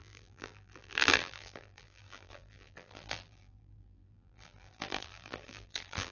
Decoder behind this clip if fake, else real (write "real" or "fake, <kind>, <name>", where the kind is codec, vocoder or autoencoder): fake, vocoder, BigVGAN v2